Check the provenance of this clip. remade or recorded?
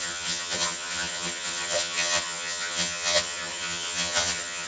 remade